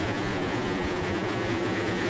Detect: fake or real fake